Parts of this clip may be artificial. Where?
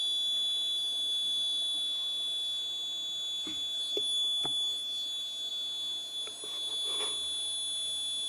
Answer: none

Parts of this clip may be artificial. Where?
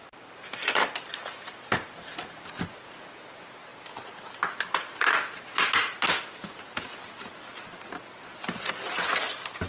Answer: 0.0-2.3 (vocoder, BigVGAN v2)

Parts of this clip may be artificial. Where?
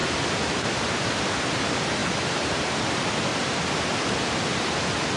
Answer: 2.0-2.7 (vocoder, BigVGAN v2); 3.3-4.0